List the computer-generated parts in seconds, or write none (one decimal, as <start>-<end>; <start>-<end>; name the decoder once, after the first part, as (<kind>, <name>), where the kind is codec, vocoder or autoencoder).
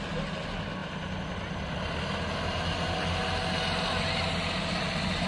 none